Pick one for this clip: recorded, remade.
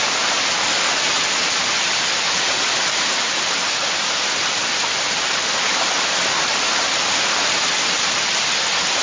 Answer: recorded